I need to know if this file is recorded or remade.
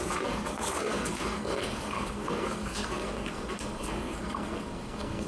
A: remade